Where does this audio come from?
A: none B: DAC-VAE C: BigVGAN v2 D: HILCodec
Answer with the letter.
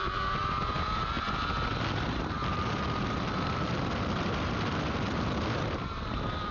C